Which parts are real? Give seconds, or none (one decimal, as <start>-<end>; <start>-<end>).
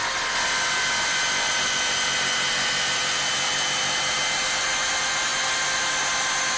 0.0-6.6